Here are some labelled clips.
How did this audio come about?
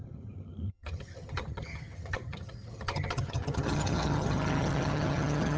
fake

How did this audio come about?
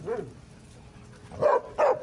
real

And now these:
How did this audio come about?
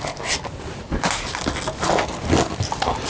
real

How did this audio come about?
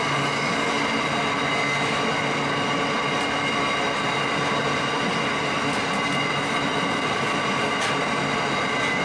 real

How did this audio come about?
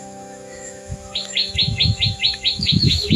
fake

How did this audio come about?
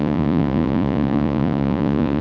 fake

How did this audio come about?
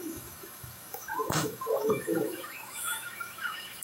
fake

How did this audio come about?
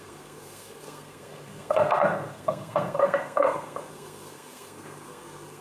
fake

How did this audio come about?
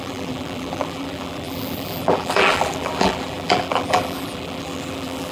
fake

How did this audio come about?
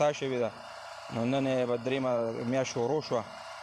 fake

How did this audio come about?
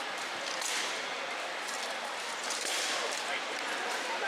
real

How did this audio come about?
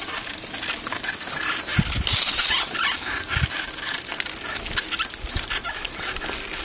real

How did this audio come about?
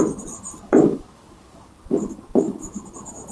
fake